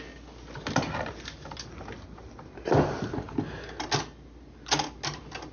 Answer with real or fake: real